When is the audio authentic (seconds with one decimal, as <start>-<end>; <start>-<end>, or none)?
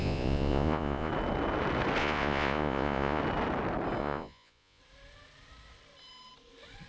1.1-2.0; 3.2-4.0; 4.8-6.9